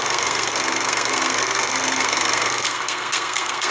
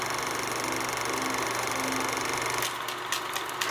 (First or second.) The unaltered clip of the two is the second